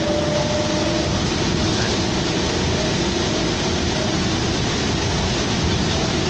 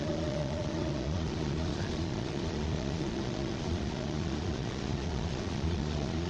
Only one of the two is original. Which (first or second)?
first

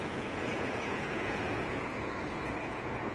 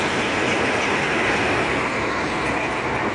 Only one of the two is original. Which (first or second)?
second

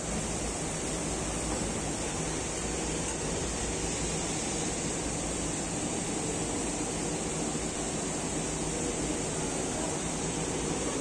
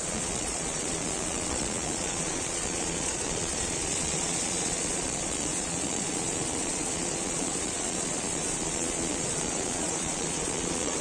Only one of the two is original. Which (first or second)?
first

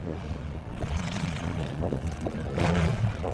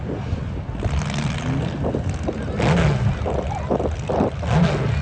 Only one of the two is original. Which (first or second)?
second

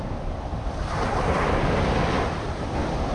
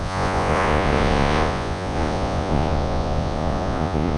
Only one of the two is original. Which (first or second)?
first